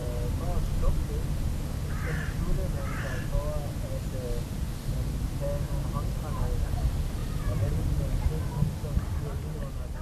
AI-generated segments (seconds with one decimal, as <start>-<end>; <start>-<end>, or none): 7.2-7.7